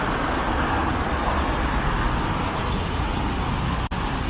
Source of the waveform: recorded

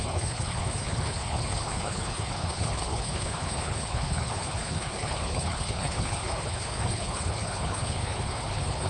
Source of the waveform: remade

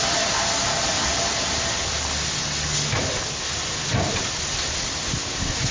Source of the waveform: recorded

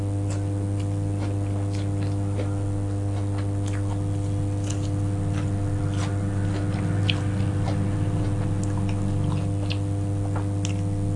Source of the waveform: recorded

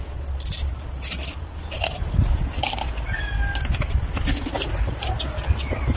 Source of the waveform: recorded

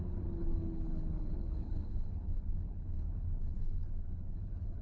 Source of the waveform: remade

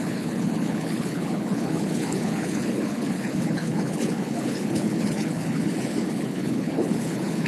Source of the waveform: remade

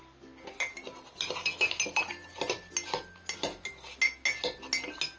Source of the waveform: recorded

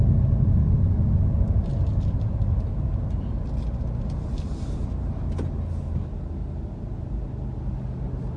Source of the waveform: recorded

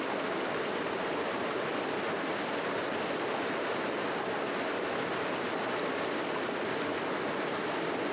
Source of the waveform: recorded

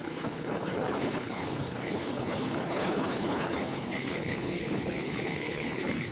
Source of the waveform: remade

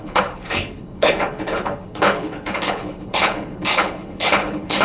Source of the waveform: remade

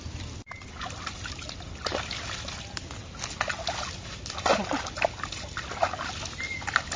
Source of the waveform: recorded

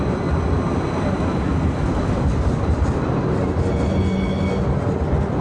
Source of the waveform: recorded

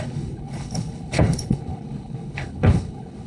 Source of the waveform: remade